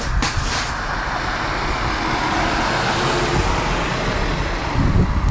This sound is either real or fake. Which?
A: real